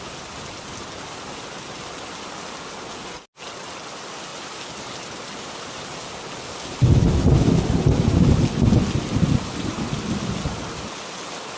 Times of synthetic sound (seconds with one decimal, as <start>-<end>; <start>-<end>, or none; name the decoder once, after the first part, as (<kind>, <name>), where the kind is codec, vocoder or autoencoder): none